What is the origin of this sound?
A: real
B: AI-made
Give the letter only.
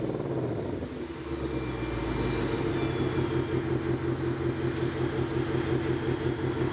A